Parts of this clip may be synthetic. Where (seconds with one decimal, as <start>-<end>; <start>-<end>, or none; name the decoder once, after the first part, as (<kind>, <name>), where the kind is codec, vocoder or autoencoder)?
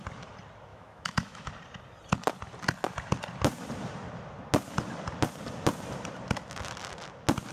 0.7-1.5 (autoencoder, DAC-VAE)